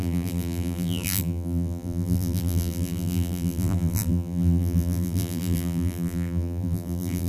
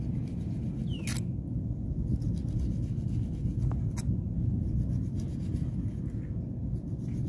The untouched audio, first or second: second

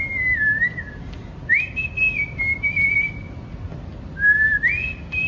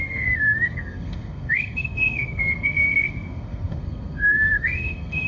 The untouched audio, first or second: first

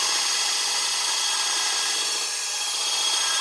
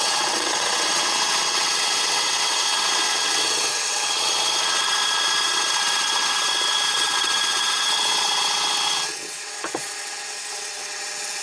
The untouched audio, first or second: first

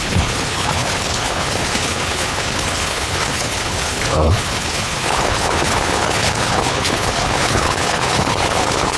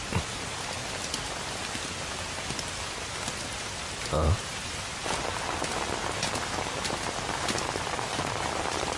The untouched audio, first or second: second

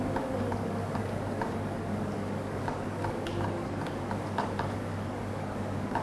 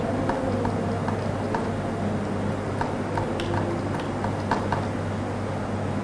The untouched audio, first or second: second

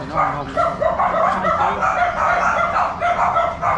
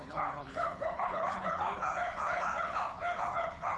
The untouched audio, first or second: first